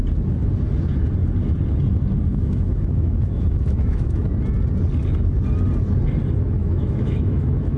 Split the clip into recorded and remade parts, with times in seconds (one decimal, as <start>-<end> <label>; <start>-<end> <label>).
0.0-2.3 recorded; 2.3-4.3 remade; 4.3-6.6 recorded; 6.6-7.8 remade